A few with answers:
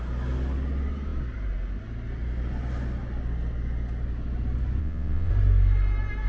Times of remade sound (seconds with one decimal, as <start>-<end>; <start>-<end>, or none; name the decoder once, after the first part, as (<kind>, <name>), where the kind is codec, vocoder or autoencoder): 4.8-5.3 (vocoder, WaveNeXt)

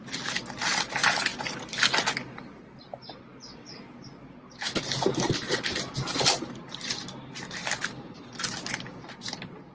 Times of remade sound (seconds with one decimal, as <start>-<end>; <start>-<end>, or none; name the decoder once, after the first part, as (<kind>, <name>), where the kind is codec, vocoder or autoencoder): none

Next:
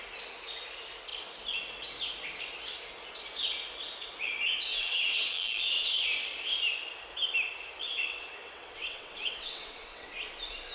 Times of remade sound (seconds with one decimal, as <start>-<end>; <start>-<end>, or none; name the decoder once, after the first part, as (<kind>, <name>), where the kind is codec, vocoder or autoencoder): 4.7-5.9 (vocoder, WaveNeXt); 7.8-10.1

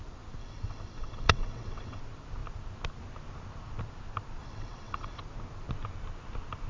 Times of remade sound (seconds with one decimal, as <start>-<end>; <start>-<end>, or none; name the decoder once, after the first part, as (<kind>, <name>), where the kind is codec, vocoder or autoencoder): 0.4-2.0 (vocoder, WaveNeXt); 4.4-5.2

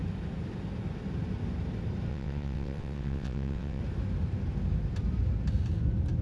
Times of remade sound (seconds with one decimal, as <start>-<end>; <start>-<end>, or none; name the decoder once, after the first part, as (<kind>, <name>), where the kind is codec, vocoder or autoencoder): 2.1-3.8 (vocoder, WaveNeXt)

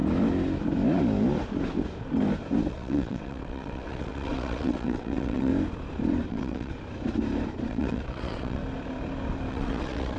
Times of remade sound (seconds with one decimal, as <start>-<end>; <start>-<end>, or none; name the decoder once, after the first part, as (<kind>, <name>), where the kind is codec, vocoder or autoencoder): 2.7-5.5 (vocoder, WaveNeXt); 6.3-6.7; 7.7-8.6; 9.5-10.2